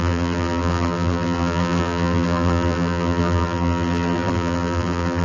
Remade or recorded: remade